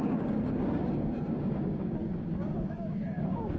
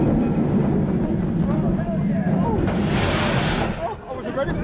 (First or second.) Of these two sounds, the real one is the second